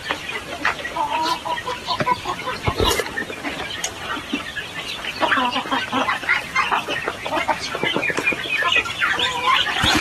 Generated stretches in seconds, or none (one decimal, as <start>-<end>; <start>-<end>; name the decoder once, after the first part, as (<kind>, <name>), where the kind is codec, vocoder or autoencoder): 0.0-3.2 (vocoder, BigVGAN v2); 7.3-10.0

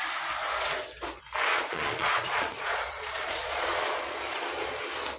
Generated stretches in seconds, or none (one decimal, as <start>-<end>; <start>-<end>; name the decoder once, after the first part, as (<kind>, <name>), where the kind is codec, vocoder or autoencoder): 1.5-4.2 (vocoder, Vocos)